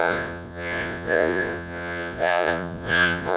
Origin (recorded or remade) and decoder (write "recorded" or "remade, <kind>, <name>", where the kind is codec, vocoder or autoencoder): remade, vocoder, Vocos